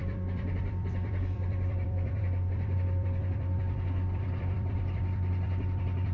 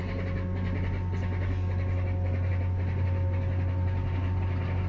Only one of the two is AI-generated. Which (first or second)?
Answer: first